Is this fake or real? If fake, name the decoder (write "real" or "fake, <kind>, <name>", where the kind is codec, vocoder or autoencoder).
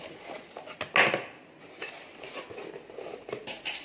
real